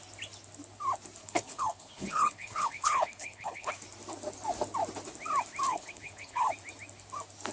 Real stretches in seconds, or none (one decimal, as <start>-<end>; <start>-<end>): 0.0-1.2; 3.7-5.7; 6.5-7.5